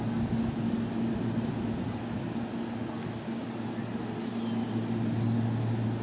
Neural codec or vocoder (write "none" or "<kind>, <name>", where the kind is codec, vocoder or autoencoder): none